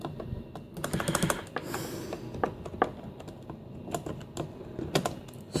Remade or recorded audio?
recorded